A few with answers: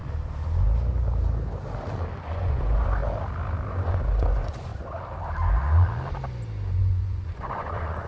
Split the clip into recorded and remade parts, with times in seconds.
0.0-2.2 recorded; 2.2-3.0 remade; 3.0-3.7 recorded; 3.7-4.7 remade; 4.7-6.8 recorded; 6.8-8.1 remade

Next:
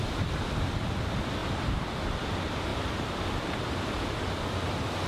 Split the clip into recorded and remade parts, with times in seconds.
0.0-5.1 recorded

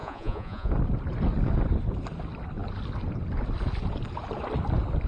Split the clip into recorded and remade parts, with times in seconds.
0.0-0.7 remade; 0.7-5.1 recorded

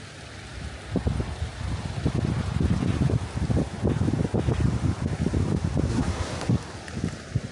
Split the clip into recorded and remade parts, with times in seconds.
0.0-5.9 recorded; 5.9-6.5 remade; 6.5-7.5 recorded

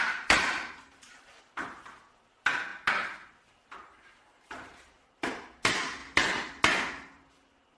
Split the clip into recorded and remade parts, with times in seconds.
0.0-2.7 remade; 2.7-4.0 recorded; 4.0-6.0 remade; 6.0-6.8 recorded; 6.8-7.8 remade

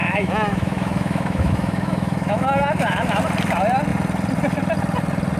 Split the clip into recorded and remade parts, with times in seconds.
0.0-3.2 remade; 3.2-5.4 recorded